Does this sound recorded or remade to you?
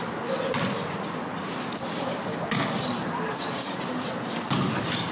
recorded